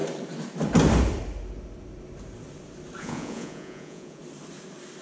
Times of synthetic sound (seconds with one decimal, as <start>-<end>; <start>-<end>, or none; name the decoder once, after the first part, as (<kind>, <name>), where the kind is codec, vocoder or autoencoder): 3.0-4.2 (vocoder, Vocos)